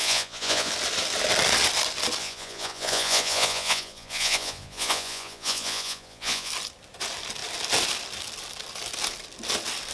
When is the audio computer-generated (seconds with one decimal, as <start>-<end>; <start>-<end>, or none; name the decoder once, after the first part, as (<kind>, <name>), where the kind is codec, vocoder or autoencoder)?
0.0-0.7 (vocoder, Vocos); 2.2-6.5